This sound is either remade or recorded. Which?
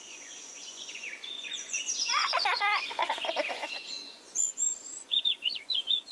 remade